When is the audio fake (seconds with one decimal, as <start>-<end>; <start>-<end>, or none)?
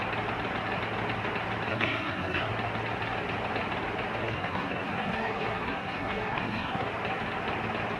1.7-2.5; 4.2-6.9